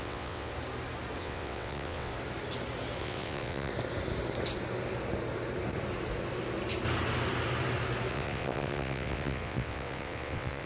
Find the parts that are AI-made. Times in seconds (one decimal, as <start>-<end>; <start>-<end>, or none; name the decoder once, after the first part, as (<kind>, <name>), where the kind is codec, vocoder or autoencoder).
0.0-0.5 (vocoder, WaveNeXt); 1.2-2.1; 3.0-3.7; 8.1-10.7